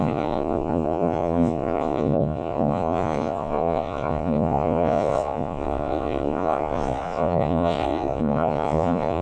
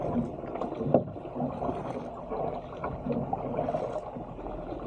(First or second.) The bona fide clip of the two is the second